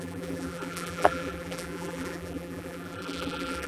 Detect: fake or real fake